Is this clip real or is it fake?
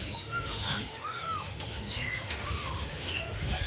fake